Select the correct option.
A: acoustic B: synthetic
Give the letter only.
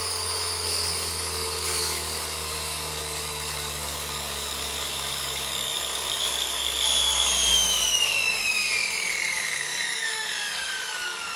B